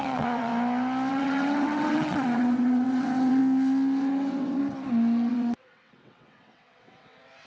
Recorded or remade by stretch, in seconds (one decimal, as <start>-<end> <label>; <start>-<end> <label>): 0.0-0.5 remade; 0.5-1.1 recorded; 1.1-3.4 remade; 3.4-4.0 recorded; 4.0-4.6 remade; 4.6-5.3 recorded; 5.3-7.5 remade